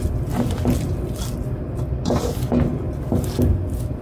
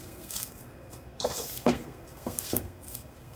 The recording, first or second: first